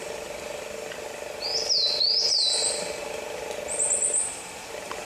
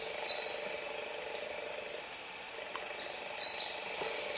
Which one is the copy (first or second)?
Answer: second